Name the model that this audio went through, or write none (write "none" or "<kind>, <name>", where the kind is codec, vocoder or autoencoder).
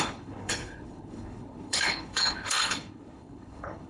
codec, HILCodec